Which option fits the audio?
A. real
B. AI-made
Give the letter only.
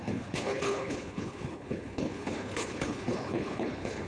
B